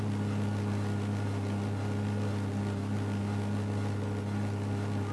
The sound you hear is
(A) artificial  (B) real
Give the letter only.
B